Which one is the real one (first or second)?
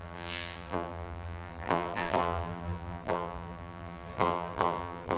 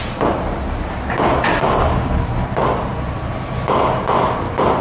second